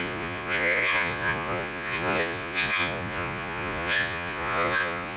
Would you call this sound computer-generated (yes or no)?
yes